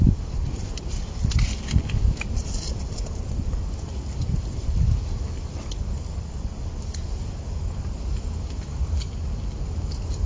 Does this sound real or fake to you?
real